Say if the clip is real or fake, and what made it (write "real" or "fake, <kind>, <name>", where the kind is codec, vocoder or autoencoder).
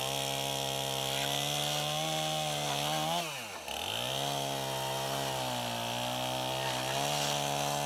real